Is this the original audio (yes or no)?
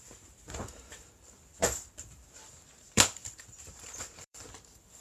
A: no